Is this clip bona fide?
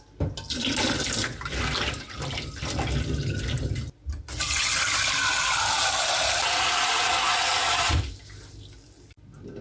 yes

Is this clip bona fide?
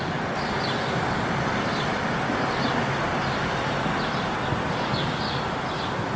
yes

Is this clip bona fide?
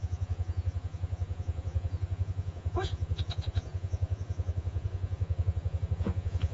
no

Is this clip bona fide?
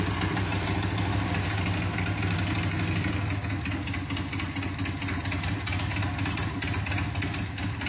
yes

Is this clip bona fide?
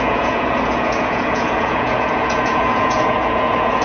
no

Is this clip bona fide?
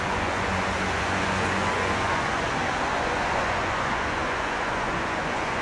no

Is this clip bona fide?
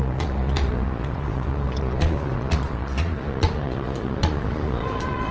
no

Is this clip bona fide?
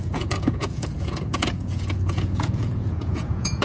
no